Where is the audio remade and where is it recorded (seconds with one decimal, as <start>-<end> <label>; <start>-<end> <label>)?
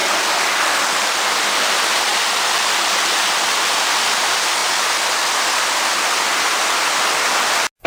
0.0-7.9 recorded